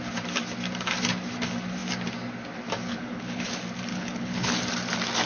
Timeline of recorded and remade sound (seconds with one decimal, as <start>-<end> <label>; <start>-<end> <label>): 0.0-2.9 recorded; 2.9-3.5 remade; 3.5-3.9 recorded; 3.9-4.5 remade; 4.5-5.3 recorded